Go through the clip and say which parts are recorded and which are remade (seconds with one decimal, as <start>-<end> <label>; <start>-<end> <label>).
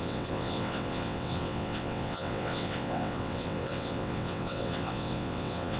0.0-5.8 remade